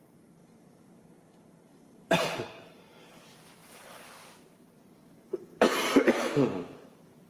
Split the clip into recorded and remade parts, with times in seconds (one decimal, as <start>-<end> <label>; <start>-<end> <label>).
0.0-0.4 recorded; 0.4-3.0 remade; 3.0-3.6 recorded; 3.6-4.8 remade; 4.8-7.3 recorded